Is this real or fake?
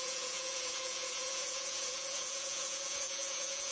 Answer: fake